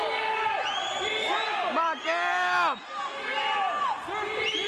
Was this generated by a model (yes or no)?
no